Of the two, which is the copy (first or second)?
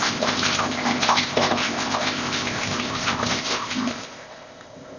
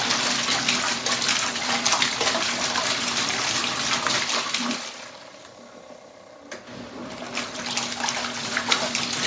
first